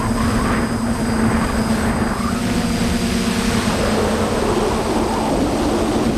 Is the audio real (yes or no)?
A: yes